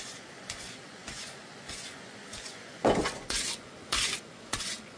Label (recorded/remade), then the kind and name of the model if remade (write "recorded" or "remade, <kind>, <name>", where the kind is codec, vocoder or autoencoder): remade, vocoder, Vocos